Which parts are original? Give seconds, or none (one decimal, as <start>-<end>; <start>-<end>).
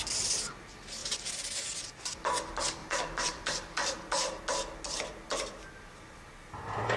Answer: 0.0-2.8; 4.4-7.0